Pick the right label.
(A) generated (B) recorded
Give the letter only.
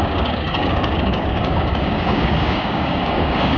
A